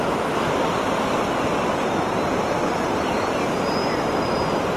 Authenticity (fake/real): fake